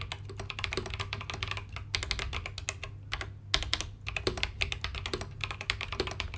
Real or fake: real